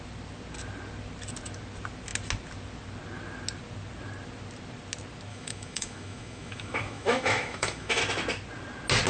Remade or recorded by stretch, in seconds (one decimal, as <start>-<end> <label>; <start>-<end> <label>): 0.0-5.3 recorded; 5.3-8.0 remade; 8.0-9.1 recorded

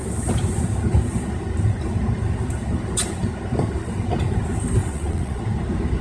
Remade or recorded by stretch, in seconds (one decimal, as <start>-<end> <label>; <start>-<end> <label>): 0.0-4.8 recorded; 4.8-5.4 remade; 5.4-6.0 recorded

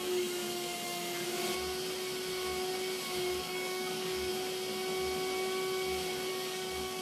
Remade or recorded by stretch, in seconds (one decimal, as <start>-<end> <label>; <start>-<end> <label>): 0.0-1.3 remade; 1.3-3.4 recorded; 3.4-4.3 remade; 4.3-6.3 recorded; 6.3-7.0 remade

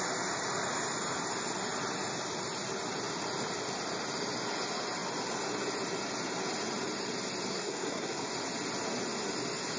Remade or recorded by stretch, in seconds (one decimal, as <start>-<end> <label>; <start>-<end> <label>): 0.0-7.5 recorded; 7.5-8.3 remade; 8.3-9.8 recorded

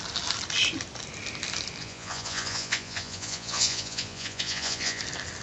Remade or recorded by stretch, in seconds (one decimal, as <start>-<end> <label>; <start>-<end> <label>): 0.0-1.8 recorded; 1.8-5.0 remade; 5.0-5.4 recorded

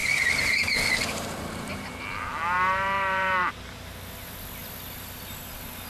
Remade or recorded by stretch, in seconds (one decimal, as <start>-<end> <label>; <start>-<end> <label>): 0.0-3.5 remade; 3.5-5.9 recorded

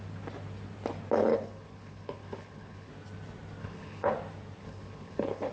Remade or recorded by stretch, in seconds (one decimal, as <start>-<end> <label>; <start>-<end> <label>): 0.0-1.3 recorded; 1.3-2.9 remade; 2.9-3.6 recorded; 3.6-4.1 remade; 4.1-4.6 recorded; 4.6-5.5 remade